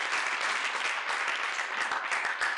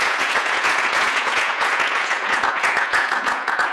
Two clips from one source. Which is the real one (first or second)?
first